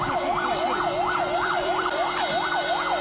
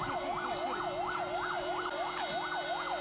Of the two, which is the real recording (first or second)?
second